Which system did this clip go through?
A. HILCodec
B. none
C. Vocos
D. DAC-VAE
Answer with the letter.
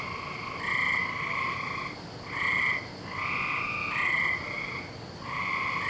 B